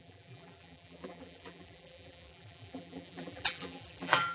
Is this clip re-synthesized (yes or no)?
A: yes